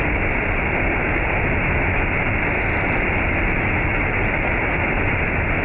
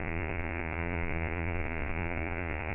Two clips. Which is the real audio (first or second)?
first